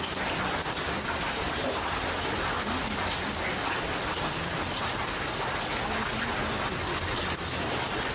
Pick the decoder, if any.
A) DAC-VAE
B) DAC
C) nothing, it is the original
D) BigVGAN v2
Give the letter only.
C